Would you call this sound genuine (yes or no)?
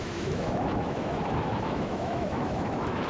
no